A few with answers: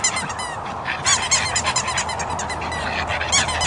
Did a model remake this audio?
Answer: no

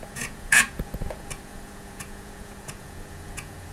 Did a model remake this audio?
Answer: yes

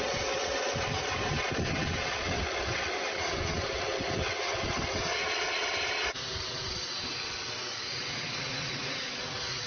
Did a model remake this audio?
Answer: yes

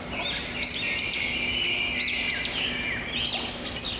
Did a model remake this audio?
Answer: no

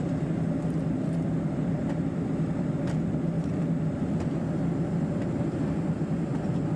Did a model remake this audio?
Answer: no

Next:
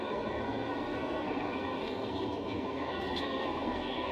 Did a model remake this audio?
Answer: yes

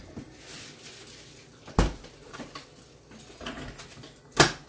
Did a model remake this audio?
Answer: no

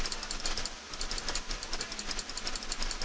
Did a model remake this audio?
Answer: no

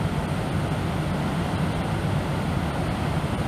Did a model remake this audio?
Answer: no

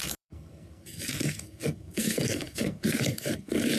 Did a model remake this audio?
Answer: yes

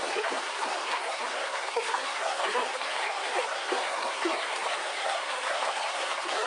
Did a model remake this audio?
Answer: yes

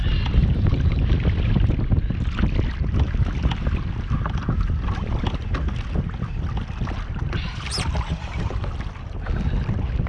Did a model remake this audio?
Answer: no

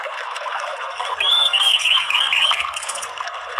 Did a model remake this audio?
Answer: yes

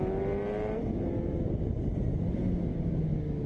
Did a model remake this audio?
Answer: no